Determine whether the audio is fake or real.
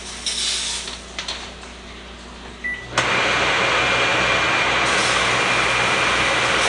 real